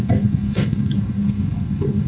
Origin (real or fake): fake